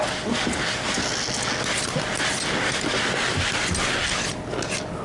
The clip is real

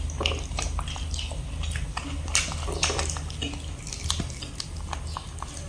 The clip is real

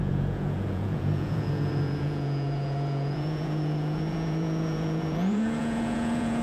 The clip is fake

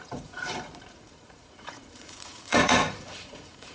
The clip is fake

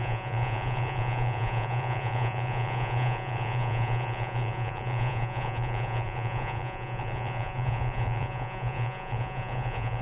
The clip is fake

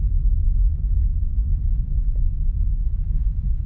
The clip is fake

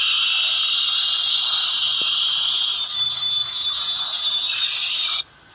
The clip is real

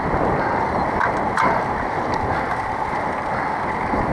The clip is real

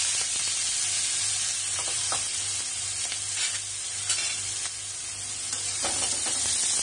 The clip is real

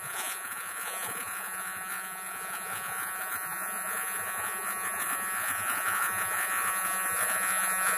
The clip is fake